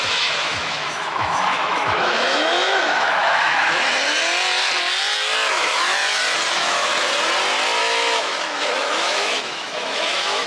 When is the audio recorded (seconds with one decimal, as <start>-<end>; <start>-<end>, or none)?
3.9-5.5; 6.0-6.5; 6.9-7.8